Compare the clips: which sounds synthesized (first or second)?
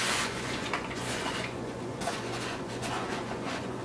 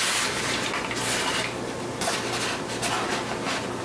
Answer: first